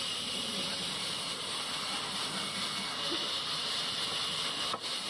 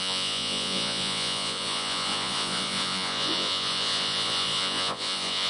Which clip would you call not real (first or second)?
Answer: second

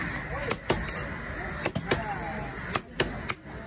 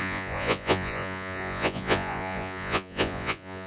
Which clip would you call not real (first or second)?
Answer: second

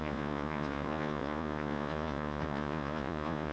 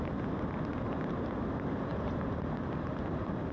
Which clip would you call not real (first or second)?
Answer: first